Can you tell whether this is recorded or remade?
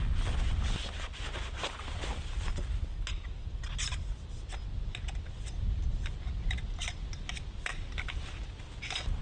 recorded